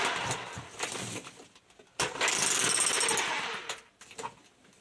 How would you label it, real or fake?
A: real